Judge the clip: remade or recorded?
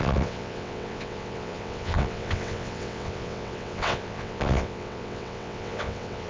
remade